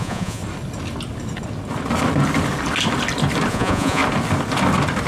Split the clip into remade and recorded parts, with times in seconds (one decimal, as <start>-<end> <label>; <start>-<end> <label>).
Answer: 0.0-0.4 remade; 0.4-3.5 recorded; 3.5-4.0 remade; 4.0-5.1 recorded